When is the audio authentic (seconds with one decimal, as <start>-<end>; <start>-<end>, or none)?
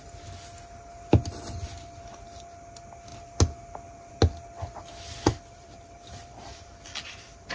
0.0-5.3